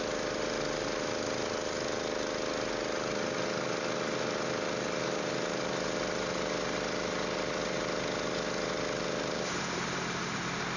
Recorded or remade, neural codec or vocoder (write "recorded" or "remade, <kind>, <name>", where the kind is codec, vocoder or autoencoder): recorded